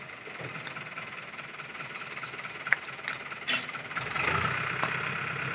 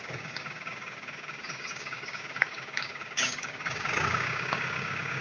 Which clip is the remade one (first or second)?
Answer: second